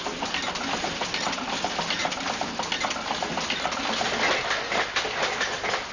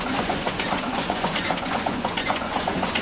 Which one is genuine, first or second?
first